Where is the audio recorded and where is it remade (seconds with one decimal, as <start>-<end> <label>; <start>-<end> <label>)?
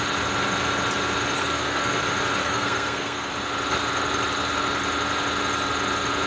0.0-1.4 recorded; 1.4-2.0 remade; 2.0-2.4 recorded; 2.4-3.3 remade; 3.3-6.3 recorded